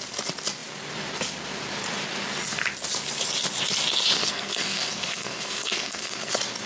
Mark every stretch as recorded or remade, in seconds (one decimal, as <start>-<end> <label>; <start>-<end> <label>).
0.0-4.2 recorded; 4.2-6.3 remade; 6.3-6.7 recorded

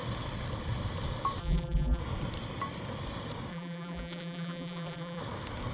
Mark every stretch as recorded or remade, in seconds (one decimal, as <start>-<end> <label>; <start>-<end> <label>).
0.0-1.4 recorded; 1.4-2.0 remade; 2.0-3.5 recorded; 3.5-5.2 remade; 5.2-5.7 recorded

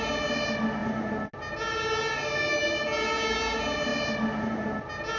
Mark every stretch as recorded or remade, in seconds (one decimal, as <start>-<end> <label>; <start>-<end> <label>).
0.0-5.2 recorded

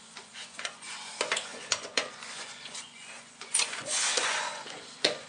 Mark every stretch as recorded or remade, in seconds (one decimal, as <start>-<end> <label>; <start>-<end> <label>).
0.0-5.3 remade